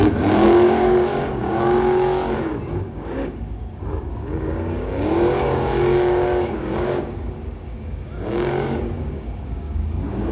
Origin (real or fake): fake